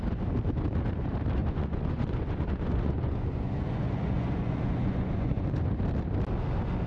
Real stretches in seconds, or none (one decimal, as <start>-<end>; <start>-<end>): 0.0-1.4; 5.5-6.9